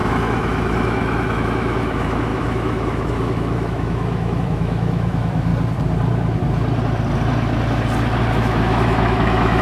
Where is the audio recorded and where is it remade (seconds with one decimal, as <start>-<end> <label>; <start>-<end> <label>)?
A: 0.0-5.5 remade; 5.5-8.3 recorded; 8.3-9.6 remade